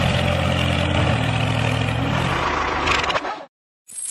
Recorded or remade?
recorded